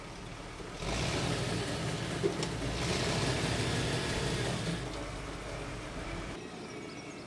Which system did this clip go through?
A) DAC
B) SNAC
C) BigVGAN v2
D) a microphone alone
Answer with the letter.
D